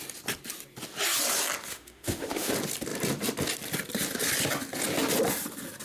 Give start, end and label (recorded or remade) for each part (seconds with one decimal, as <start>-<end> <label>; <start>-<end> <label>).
0.0-1.7 recorded; 1.7-2.5 remade; 2.5-5.8 recorded